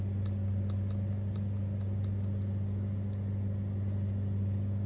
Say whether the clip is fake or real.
real